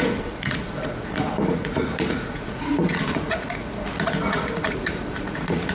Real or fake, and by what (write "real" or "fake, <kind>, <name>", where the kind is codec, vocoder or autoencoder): fake, vocoder, Vocos